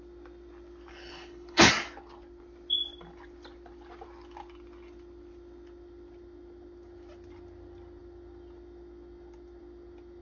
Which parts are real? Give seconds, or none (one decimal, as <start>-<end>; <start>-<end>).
0.0-0.9; 1.7-10.2